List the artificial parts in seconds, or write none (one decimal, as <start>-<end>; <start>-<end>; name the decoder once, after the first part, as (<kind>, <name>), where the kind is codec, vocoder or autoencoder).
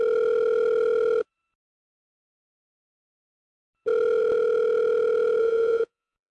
5.4-6.3 (vocoder, Vocos)